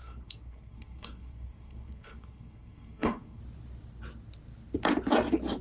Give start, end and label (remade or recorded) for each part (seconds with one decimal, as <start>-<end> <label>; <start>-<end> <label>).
0.0-3.4 remade; 3.4-5.6 recorded